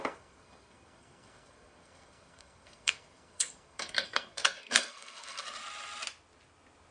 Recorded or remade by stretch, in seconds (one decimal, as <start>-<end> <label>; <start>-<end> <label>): 0.0-5.6 remade; 5.6-6.9 recorded